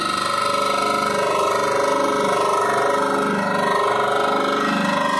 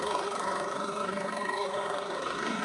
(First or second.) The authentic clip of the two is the first